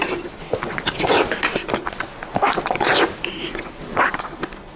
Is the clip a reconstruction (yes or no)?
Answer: no